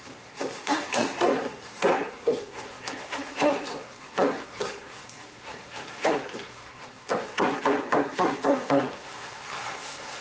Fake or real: fake